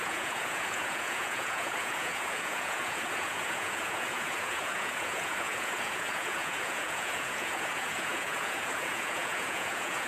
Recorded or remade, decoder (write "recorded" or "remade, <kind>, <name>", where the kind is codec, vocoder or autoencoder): remade, vocoder, Vocos